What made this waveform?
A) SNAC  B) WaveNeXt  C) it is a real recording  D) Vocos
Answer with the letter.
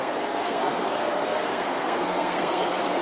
A